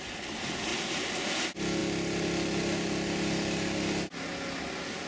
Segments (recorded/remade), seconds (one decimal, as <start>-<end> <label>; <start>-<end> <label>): 0.0-0.7 recorded; 0.7-1.4 remade; 1.4-5.1 recorded

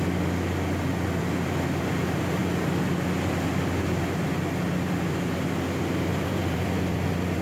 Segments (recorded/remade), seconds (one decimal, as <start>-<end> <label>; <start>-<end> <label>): 0.0-6.1 recorded; 6.1-7.4 remade

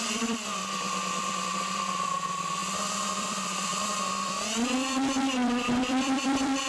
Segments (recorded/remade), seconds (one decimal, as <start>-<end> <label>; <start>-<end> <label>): 0.0-6.7 remade

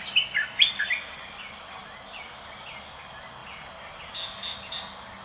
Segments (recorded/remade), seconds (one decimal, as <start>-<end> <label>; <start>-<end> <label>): 0.0-1.8 recorded; 1.8-2.3 remade; 2.3-5.2 recorded

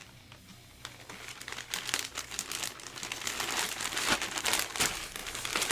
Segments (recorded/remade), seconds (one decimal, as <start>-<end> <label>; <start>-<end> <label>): 0.0-5.7 recorded